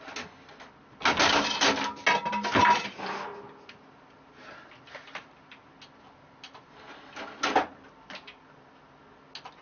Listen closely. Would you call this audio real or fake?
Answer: real